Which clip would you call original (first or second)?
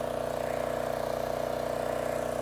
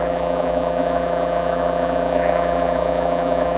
first